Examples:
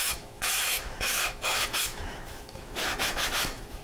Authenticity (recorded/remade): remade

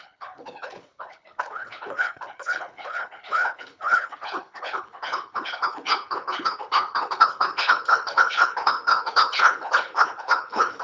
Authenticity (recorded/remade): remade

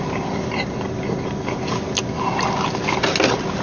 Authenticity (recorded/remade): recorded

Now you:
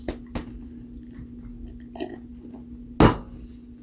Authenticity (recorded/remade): recorded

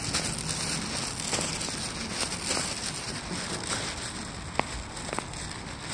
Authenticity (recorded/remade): recorded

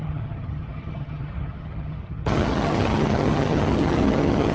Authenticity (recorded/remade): remade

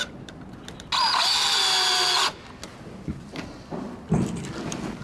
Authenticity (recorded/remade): recorded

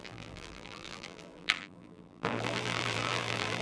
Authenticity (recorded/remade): remade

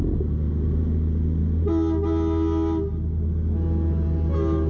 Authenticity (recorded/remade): recorded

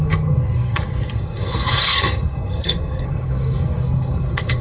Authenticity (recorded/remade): remade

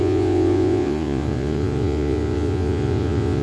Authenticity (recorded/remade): remade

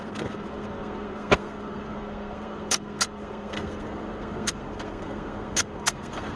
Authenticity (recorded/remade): remade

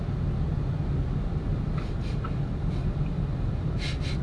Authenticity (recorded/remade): recorded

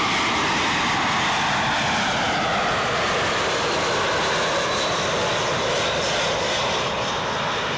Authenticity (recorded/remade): recorded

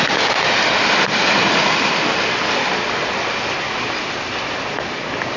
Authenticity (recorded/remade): recorded